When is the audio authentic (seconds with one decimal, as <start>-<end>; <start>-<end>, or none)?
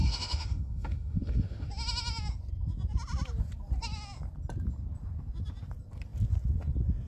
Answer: 1.7-7.1